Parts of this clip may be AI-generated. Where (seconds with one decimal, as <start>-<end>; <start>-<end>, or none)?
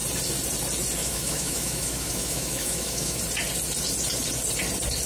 1.0-3.2